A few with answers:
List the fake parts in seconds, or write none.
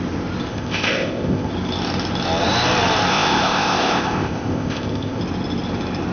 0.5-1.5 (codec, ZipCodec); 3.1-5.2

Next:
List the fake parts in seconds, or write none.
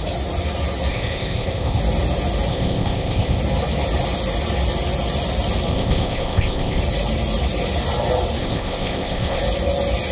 0.9-1.8 (codec, ZipCodec); 2.5-3.4; 5.7-6.8; 8.4-9.4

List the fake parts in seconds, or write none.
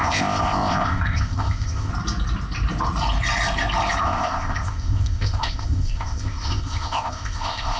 0.0-1.9 (codec, ZipCodec); 4.0-7.8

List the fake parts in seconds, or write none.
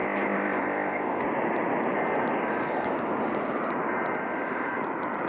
0.0-1.2 (codec, ZipCodec)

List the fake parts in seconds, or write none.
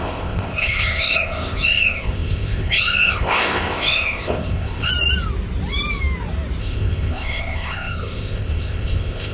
0.0-4.9 (codec, ZipCodec); 6.6-9.3